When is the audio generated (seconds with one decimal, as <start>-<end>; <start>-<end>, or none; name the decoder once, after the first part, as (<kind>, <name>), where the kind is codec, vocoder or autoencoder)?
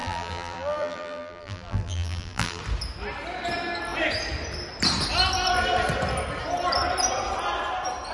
0.0-2.6 (vocoder, BigVGAN v2)